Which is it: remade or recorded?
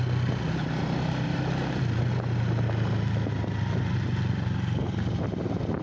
recorded